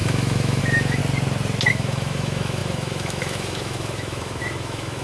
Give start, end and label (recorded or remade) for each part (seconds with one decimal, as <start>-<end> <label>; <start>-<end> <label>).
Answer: 0.0-1.0 remade; 1.0-1.7 recorded; 1.7-5.0 remade